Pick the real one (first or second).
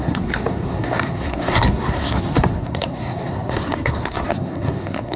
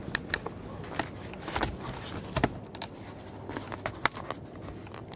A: second